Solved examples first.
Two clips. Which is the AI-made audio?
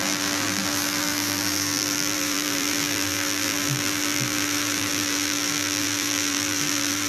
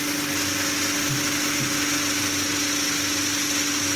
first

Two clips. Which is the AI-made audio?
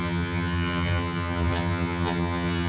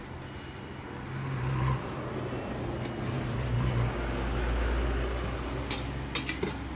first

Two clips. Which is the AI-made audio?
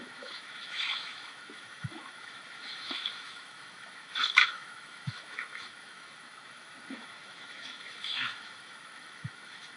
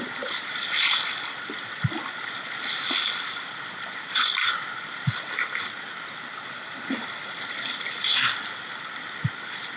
first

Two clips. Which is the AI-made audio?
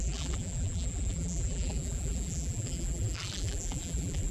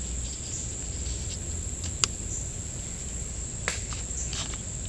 first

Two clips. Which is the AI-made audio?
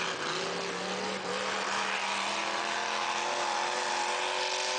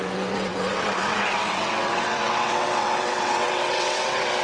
second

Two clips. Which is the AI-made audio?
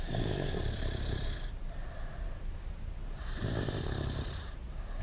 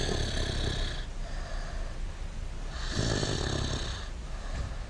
first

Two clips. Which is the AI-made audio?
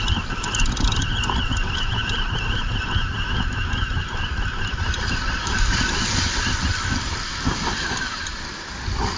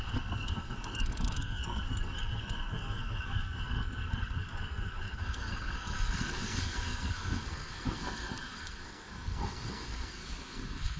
second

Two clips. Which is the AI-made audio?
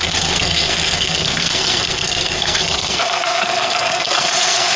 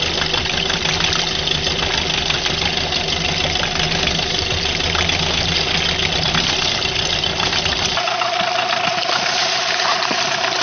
first